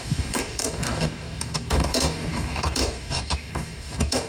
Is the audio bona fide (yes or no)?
no